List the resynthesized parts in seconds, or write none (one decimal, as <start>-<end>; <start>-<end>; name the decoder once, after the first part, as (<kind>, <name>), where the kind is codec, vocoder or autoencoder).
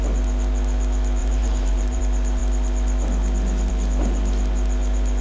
1.2-2.0 (vocoder, BigVGAN v2)